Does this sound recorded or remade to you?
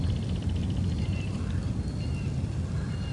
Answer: recorded